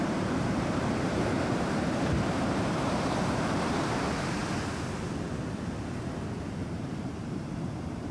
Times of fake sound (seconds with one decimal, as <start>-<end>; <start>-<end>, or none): 0.0-4.4; 6.5-8.1